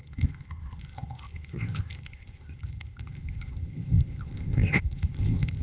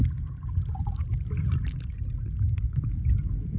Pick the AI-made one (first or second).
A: first